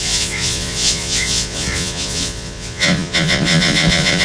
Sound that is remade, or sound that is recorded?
remade